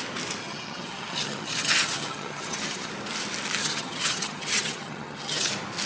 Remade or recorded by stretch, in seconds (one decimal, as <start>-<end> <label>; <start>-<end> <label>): 0.0-0.4 recorded; 0.4-2.9 remade; 2.9-3.6 recorded; 3.6-5.5 remade; 5.5-5.9 recorded